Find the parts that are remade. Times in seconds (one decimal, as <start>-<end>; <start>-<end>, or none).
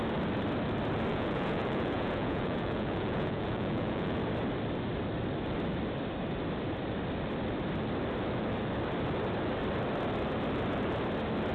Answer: 1.1-4.2